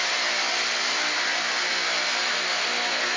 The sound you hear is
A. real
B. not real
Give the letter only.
A